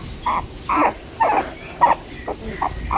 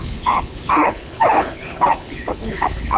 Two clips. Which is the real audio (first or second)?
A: first